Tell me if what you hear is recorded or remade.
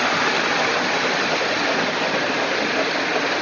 recorded